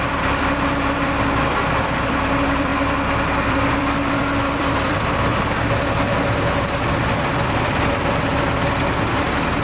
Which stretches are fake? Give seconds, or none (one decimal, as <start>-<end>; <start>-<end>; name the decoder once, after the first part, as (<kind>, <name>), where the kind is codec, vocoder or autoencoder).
0.0-8.3 (vocoder, BigVGAN v2); 9.1-9.6